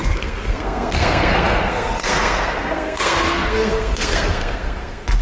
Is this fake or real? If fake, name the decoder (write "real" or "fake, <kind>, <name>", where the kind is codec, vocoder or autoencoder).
fake, codec, SNAC